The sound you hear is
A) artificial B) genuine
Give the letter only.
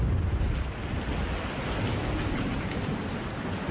B